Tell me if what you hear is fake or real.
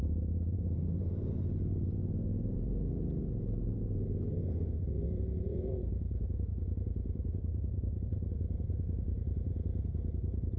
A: fake